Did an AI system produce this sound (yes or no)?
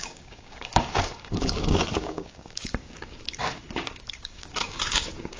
yes